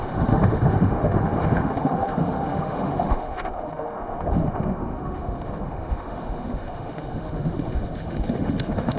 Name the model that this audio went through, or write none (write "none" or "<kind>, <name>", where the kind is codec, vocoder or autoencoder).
autoencoder, DAC-VAE